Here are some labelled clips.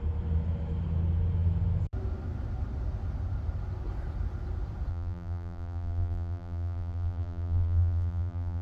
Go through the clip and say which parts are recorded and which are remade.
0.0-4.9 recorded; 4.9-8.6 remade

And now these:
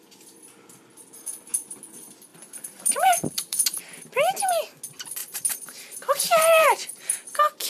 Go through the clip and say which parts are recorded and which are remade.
0.0-2.3 recorded; 2.3-3.8 remade; 3.8-5.2 recorded; 5.2-7.3 remade; 7.3-7.7 recorded

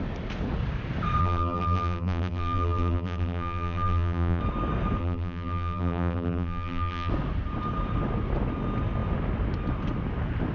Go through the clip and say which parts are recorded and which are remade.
0.0-1.2 recorded; 1.2-4.4 remade; 4.4-5.0 recorded; 5.0-7.1 remade; 7.1-10.5 recorded

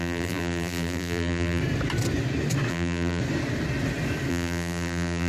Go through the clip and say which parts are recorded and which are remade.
0.0-1.6 remade; 1.6-2.7 recorded; 2.7-3.2 remade; 3.2-4.3 recorded; 4.3-5.3 remade

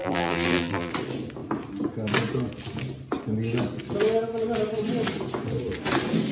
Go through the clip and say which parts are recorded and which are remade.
0.0-0.9 remade; 0.9-6.3 recorded